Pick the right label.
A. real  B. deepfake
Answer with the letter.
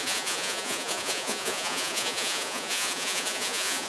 B